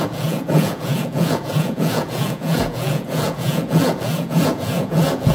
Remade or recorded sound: remade